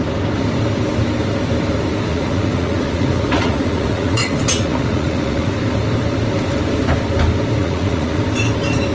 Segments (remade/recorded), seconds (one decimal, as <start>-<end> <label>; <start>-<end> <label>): 0.0-2.1 recorded; 2.1-5.5 remade; 5.5-7.6 recorded; 7.6-8.2 remade; 8.2-8.9 recorded